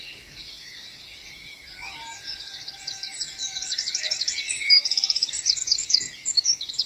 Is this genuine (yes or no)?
no